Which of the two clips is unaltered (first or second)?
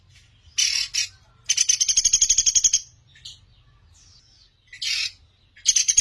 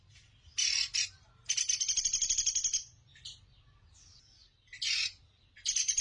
first